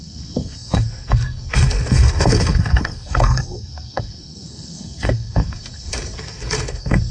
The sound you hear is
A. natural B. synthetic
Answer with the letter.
B